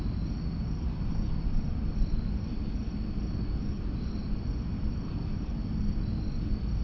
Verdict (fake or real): real